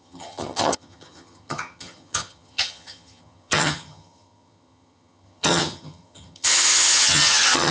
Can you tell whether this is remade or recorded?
remade